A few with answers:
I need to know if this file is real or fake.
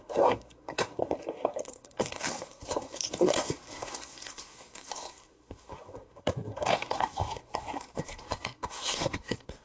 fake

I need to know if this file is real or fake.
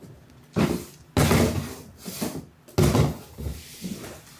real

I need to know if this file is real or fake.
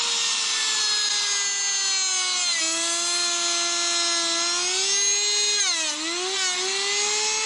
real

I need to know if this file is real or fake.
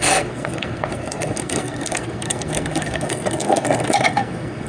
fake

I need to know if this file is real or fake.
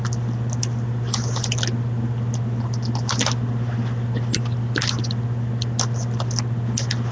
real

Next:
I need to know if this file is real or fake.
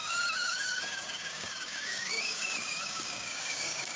fake